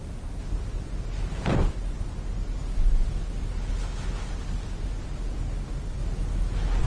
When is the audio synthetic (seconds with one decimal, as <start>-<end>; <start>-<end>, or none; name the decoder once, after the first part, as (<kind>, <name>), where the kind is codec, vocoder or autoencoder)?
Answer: none